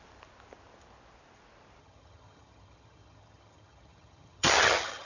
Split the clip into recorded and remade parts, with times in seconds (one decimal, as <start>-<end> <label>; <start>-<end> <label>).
0.0-1.8 recorded; 1.8-5.1 remade